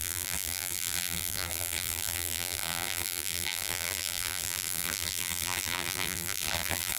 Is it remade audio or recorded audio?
remade